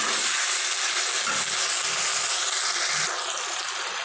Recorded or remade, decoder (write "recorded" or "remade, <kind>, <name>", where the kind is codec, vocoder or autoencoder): recorded